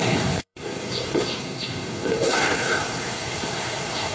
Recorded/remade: remade